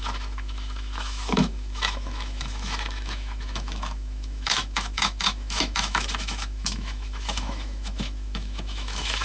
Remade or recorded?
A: remade